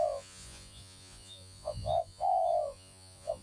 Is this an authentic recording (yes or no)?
no